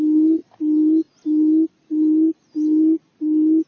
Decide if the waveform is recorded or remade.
recorded